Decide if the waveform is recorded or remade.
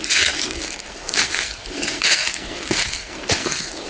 remade